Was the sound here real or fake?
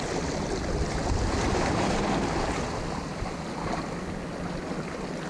real